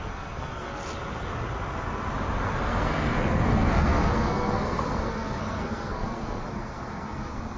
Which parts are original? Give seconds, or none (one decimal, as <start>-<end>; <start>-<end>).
0.8-2.4